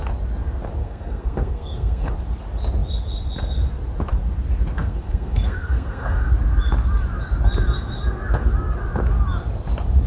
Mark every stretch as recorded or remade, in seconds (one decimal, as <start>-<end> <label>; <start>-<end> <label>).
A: 0.0-0.8 recorded; 0.8-2.1 remade; 2.1-4.8 recorded; 4.8-6.3 remade; 6.3-10.1 recorded